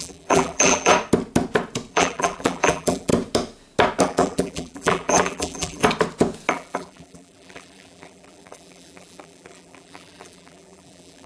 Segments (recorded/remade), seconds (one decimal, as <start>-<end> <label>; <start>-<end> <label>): 0.0-0.9 remade; 0.9-1.9 recorded; 1.9-3.1 remade; 3.1-4.0 recorded; 4.0-5.8 remade; 5.8-6.5 recorded; 6.5-11.3 remade